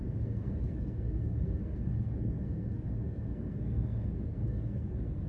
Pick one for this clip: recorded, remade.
remade